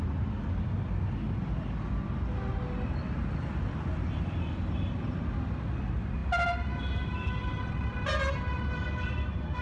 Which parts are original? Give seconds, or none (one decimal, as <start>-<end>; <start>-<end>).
0.0-9.6